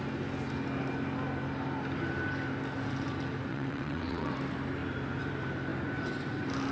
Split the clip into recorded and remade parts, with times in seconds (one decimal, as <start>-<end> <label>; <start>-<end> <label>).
0.0-3.5 recorded; 3.5-4.3 remade; 4.3-6.7 recorded